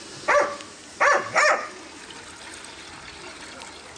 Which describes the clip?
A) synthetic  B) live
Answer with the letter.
B